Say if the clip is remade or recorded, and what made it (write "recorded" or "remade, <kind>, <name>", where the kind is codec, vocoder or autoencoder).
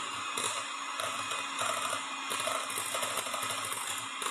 recorded